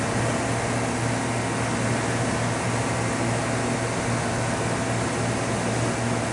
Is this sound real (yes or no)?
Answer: yes